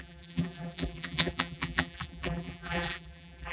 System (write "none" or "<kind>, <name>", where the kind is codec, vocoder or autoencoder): vocoder, BigVGAN v2